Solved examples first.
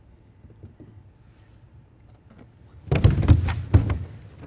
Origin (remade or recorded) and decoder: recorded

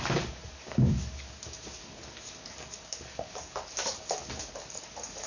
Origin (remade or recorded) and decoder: remade, codec, DAC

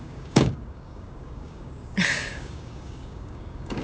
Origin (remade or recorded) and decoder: remade, codec, DAC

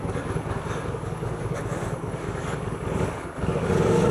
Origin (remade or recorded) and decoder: remade, codec, DAC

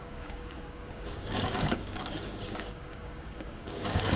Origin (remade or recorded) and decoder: remade, codec, DAC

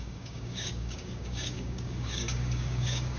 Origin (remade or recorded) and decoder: remade, codec, DAC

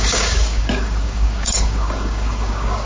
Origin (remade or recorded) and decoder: remade, codec, DAC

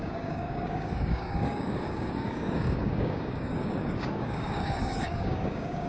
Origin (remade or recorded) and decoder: remade, codec, DAC